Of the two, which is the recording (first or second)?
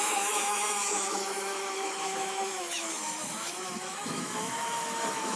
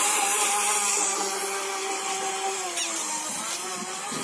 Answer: second